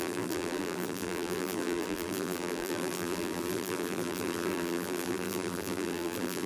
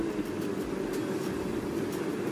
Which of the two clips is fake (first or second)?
first